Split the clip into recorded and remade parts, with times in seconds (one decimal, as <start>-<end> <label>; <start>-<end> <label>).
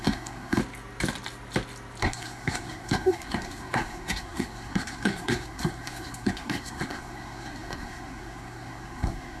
0.0-0.6 remade; 0.6-2.0 recorded; 2.0-9.4 remade